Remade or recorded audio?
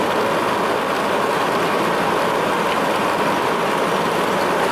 recorded